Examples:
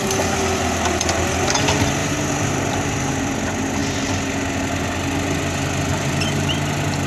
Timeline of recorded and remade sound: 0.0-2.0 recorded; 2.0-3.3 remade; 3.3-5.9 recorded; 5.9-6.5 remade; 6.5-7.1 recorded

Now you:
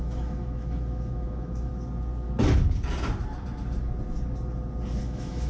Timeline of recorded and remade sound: 0.0-1.7 remade; 1.7-5.0 recorded; 5.0-5.5 remade

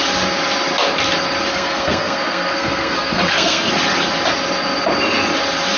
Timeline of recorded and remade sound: 0.0-1.5 recorded; 1.5-3.7 remade; 3.7-5.8 recorded

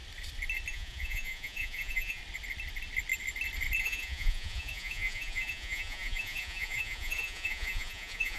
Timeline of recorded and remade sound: 0.0-0.7 recorded; 0.7-2.2 remade; 2.2-3.8 recorded; 3.8-8.4 remade